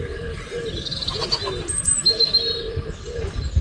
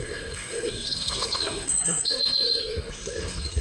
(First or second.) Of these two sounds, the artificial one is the second